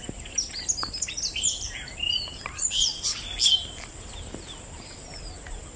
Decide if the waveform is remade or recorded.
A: recorded